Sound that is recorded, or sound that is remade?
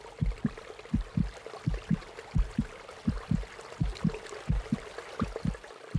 recorded